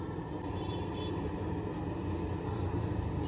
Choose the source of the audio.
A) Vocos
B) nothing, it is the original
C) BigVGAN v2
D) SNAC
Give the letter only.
B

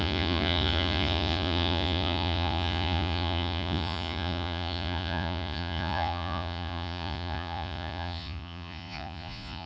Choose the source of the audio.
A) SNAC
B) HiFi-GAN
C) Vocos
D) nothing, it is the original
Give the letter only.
C